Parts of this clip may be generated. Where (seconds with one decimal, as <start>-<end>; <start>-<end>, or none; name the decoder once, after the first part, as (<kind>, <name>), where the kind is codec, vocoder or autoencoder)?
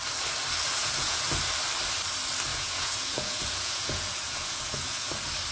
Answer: 0.7-1.3 (vocoder, Vocos); 2.5-5.1